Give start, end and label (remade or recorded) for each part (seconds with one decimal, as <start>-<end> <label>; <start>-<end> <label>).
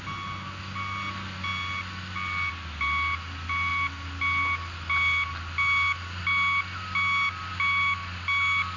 0.0-8.8 recorded